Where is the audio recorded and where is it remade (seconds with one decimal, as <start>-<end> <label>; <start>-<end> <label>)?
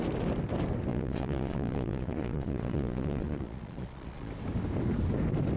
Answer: 0.0-0.9 recorded; 0.9-4.3 remade; 4.3-5.6 recorded